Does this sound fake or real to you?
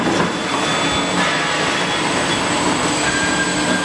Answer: real